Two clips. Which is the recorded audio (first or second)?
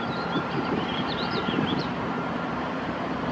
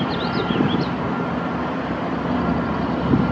second